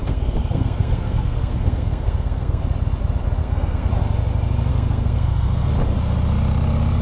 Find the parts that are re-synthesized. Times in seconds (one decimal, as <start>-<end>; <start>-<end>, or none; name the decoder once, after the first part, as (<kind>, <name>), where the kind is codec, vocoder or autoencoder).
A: 0.0-2.6 (codec, SNAC); 3.4-3.9; 4.7-5.7